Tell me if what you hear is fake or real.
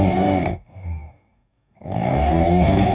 fake